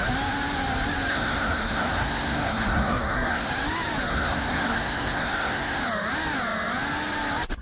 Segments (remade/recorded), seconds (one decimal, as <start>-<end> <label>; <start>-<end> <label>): 0.0-1.1 recorded; 1.1-3.5 remade; 3.5-4.1 recorded; 4.1-5.8 remade; 5.8-7.6 recorded